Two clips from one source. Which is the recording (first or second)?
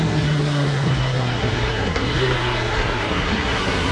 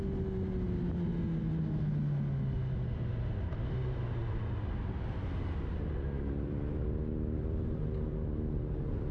second